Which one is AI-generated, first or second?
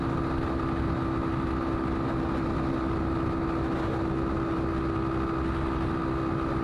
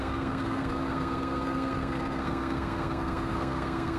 second